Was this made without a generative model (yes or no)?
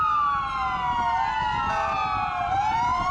yes